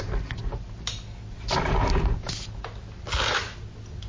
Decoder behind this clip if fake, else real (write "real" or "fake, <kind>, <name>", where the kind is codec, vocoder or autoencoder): real